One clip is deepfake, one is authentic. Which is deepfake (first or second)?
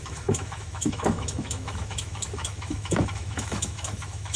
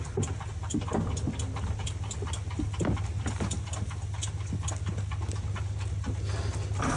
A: first